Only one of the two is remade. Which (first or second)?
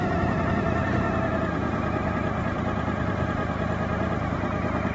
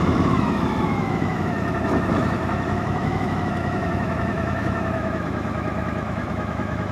second